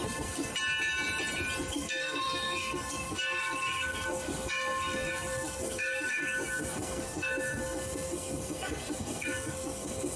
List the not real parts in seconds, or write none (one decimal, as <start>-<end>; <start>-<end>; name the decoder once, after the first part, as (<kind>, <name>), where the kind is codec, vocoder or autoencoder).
0.0-0.5 (codec, SNAC); 1.7-10.2